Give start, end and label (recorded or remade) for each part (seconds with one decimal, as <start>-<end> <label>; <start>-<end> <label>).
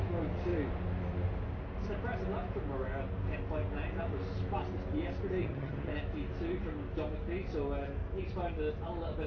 0.0-5.4 recorded; 5.4-5.9 remade; 5.9-9.3 recorded